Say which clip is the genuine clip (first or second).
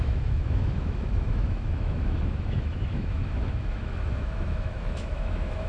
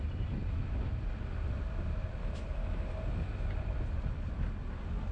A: second